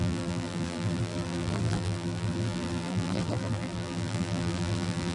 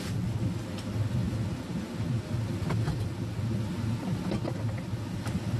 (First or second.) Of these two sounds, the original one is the second